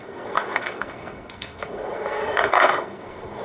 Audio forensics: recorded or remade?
remade